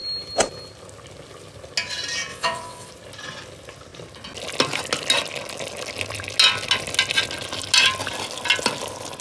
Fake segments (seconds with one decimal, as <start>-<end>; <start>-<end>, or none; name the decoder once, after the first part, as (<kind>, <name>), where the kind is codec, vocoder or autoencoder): 2.3-2.9 (vocoder, WaveNeXt)